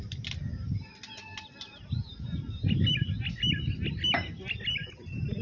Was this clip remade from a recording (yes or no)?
no